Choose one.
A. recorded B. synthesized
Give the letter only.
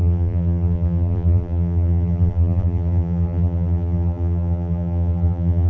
B